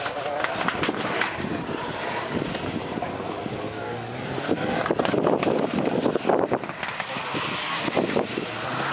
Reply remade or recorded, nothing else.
recorded